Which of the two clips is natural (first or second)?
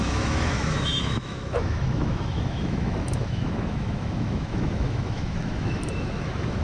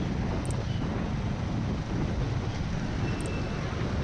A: second